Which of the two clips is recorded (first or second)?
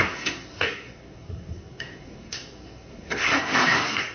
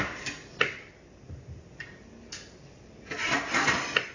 second